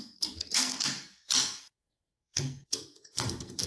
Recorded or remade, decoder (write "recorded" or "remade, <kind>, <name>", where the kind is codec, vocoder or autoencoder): remade, codec, SNAC